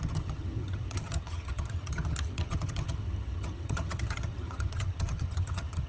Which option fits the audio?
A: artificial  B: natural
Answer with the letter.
A